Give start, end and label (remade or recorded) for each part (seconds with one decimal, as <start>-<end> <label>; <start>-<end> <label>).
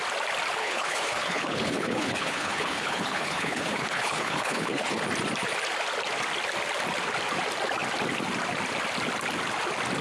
0.0-0.6 recorded; 0.6-5.0 remade; 5.0-10.0 recorded